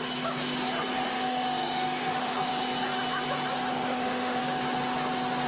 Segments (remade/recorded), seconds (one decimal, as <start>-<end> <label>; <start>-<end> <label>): 0.0-1.1 recorded; 1.1-2.5 remade; 2.5-3.7 recorded; 3.7-4.4 remade; 4.4-5.5 recorded